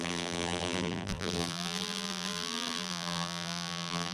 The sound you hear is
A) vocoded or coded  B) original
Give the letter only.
A